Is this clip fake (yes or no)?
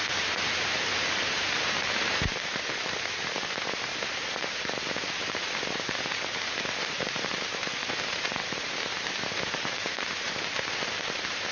yes